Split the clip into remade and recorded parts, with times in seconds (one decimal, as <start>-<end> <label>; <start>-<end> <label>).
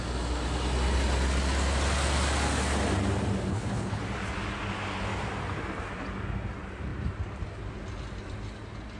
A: 0.0-3.5 recorded; 3.5-4.0 remade; 4.0-9.0 recorded